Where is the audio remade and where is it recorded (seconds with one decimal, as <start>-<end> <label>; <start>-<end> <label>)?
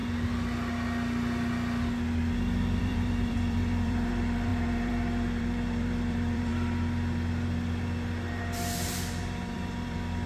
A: 0.0-2.8 recorded; 2.8-6.5 remade; 6.5-8.4 recorded; 8.4-10.3 remade